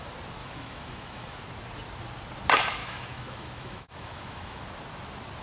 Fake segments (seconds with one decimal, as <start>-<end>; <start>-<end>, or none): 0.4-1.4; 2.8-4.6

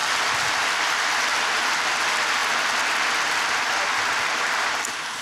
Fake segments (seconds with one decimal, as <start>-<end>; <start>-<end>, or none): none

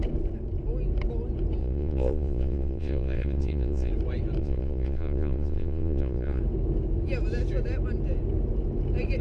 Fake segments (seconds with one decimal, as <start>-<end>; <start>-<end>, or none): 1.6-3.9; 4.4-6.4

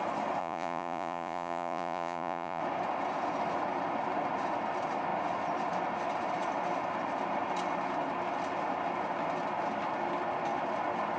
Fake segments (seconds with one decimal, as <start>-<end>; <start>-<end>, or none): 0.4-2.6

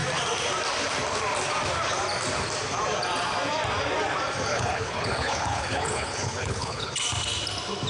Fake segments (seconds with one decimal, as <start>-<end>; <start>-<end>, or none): 4.5-6.9